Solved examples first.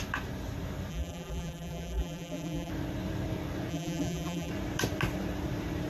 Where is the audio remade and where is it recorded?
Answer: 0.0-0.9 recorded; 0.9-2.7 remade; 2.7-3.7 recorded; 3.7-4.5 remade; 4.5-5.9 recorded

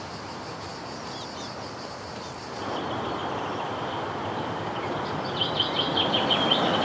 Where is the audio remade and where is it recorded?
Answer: 0.0-6.8 remade